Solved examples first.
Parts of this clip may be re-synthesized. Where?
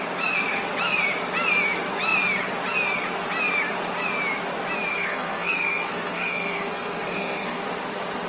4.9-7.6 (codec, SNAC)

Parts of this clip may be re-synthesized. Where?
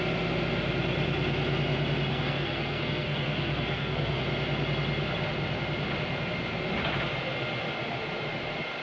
2.1-4.2 (codec, SNAC)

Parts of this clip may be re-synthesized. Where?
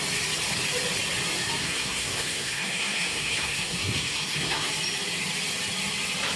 1.6-4.7 (codec, SNAC)